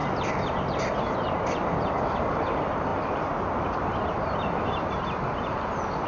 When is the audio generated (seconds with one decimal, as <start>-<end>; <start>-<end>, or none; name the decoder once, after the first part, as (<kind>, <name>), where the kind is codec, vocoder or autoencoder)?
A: none